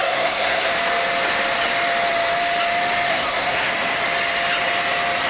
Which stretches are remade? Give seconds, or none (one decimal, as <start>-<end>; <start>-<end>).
0.0-0.7; 3.1-3.7